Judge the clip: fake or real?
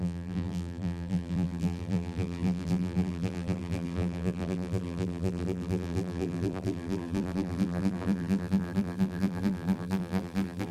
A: fake